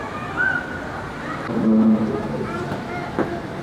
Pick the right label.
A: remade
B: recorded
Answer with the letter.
B